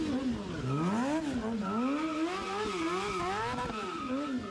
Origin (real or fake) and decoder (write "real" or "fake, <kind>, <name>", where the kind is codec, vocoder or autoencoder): real